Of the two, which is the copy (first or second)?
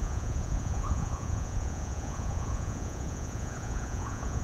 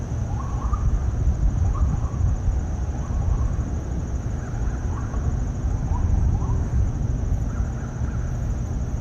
first